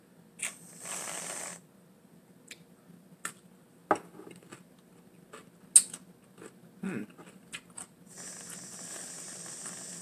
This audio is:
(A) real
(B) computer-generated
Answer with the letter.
A